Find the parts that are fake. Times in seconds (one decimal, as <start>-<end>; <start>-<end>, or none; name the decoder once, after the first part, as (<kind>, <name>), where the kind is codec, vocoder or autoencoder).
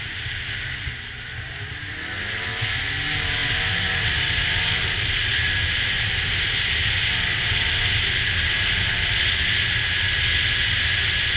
3.4-7.9 (vocoder, BigVGAN v2)